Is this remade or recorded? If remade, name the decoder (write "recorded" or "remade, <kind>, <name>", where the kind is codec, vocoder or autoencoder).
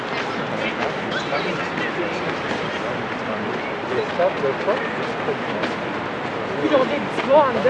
recorded